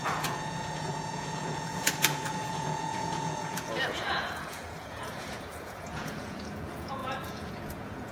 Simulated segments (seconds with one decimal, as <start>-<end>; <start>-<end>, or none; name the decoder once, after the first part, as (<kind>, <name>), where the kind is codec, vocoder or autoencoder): 0.0-8.1 (vocoder, Vocos)